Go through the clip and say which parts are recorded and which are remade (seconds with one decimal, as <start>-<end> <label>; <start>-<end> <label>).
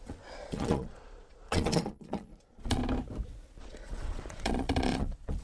0.0-2.8 remade; 2.8-3.6 recorded; 3.6-5.4 remade